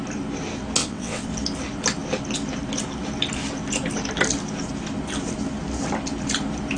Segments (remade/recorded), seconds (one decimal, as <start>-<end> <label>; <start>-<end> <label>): 0.0-0.8 recorded; 0.8-1.3 remade; 1.3-6.8 recorded